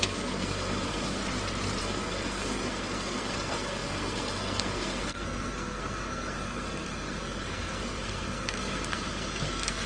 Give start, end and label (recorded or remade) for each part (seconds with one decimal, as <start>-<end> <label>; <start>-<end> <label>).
0.0-1.2 remade; 1.2-1.8 recorded; 1.8-9.9 remade

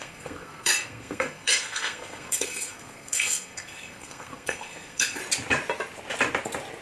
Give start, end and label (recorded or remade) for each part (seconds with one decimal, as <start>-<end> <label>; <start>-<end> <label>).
0.0-5.2 remade; 5.2-6.8 recorded

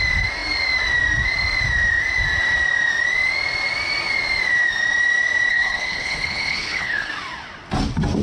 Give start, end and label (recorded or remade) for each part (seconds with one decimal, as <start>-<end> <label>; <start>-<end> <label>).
0.0-5.5 recorded; 5.5-7.1 remade; 7.1-8.2 recorded

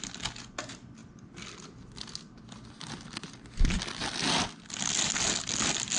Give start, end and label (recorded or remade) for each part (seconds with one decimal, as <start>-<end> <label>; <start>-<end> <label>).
0.0-6.0 recorded

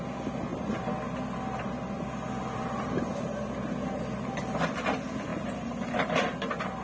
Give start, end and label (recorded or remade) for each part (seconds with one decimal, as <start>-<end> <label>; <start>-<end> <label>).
0.0-6.8 recorded

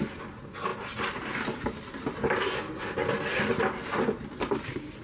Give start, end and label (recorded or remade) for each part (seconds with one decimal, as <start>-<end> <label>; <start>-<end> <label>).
0.0-5.0 recorded

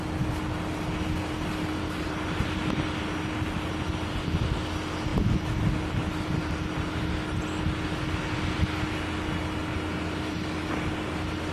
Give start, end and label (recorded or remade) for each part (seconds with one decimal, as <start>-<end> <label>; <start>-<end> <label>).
0.0-11.5 recorded

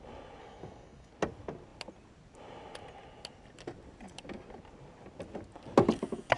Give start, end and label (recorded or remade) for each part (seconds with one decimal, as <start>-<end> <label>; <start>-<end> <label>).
0.0-0.4 recorded; 0.4-1.1 remade; 1.1-6.4 recorded